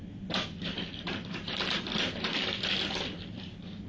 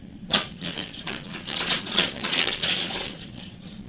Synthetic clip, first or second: second